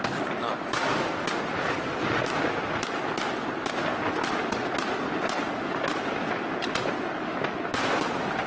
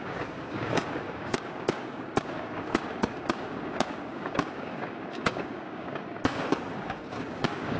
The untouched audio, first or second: first